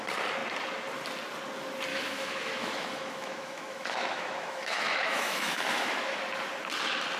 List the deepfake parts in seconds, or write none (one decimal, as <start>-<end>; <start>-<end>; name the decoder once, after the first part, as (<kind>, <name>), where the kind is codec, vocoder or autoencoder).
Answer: 1.9-6.2 (autoencoder, DAC-VAE)